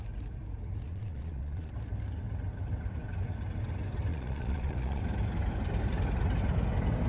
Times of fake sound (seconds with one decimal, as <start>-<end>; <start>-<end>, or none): 0.9-1.7; 4.1-5.0